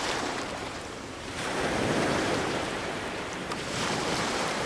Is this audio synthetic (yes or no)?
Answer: yes